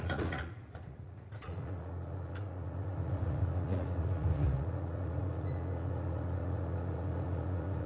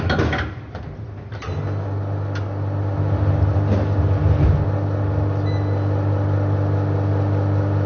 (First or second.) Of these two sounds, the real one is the second